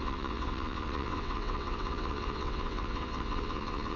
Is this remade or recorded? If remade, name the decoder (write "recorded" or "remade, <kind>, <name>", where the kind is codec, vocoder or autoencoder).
remade, vocoder, WaveNeXt